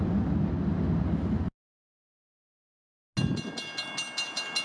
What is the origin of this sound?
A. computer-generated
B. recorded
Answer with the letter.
B